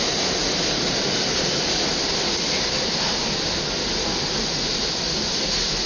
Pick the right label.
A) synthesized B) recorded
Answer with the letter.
B